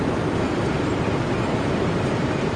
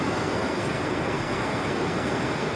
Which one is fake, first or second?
second